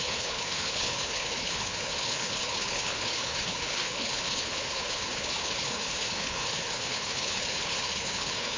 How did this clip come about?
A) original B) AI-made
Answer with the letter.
B